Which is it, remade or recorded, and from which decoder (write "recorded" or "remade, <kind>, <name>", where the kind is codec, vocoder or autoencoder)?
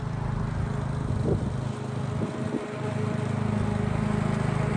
recorded